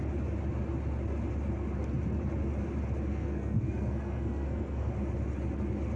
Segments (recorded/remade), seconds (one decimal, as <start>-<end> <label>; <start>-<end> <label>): 0.0-3.1 recorded; 3.1-4.9 remade; 4.9-6.0 recorded